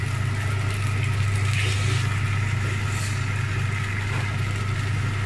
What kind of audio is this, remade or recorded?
recorded